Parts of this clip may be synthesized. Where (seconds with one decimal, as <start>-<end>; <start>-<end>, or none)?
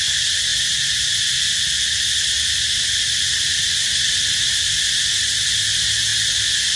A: none